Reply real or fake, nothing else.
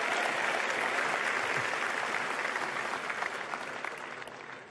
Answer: real